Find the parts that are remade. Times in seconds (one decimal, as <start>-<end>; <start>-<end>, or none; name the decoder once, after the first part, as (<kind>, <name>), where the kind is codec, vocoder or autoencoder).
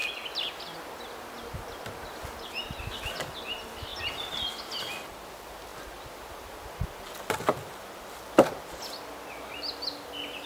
none